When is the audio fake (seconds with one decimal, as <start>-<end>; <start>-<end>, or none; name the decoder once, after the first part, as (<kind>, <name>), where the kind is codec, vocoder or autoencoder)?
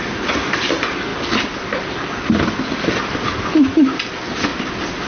none